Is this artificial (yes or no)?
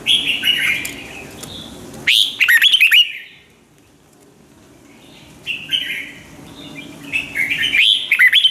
no